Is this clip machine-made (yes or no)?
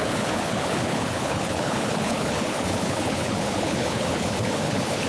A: yes